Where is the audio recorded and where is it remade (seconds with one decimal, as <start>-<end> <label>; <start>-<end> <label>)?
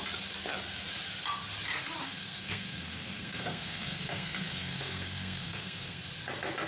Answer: 0.0-2.0 recorded; 2.0-6.0 remade; 6.0-6.7 recorded